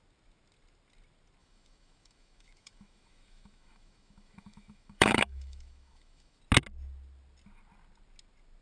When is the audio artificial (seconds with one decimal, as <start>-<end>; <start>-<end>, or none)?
1.4-6.4